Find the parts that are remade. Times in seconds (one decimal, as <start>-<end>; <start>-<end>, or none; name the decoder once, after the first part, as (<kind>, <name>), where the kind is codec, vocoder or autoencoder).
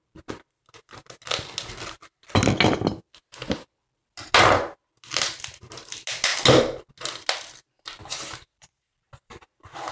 none